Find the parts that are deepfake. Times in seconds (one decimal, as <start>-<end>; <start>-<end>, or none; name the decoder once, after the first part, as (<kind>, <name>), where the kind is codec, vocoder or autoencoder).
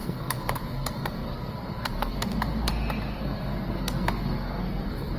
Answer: 0.0-2.7 (codec, SNAC); 3.1-5.2